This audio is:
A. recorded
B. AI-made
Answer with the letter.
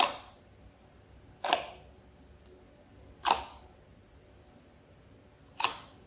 A